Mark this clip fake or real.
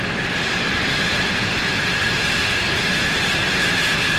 real